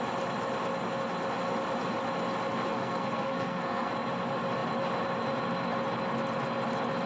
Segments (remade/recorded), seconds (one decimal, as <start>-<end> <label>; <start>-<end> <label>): 0.0-2.7 recorded; 2.7-3.9 remade; 3.9-7.1 recorded